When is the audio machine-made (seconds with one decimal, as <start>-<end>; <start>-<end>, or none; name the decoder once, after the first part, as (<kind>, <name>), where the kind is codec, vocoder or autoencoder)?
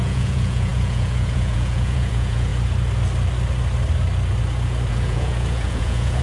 0.0-2.5 (vocoder, Vocos); 4.9-6.2